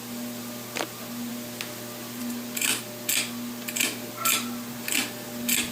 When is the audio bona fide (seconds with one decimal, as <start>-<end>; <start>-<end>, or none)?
0.0-5.7